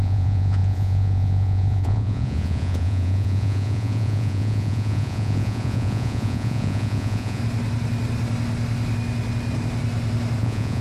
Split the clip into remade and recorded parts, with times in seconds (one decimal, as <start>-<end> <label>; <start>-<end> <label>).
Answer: 0.0-7.4 remade; 7.4-10.4 recorded; 10.4-10.8 remade